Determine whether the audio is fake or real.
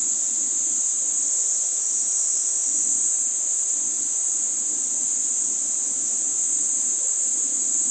real